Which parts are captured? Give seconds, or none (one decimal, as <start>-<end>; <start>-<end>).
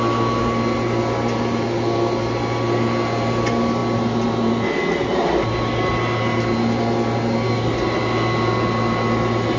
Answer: 0.0-9.6